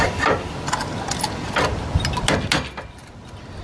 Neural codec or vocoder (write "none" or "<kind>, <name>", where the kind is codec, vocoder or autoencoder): none